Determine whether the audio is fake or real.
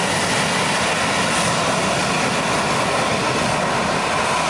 real